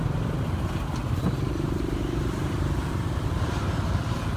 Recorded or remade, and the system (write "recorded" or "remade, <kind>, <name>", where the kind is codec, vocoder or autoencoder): remade, vocoder, BigVGAN v2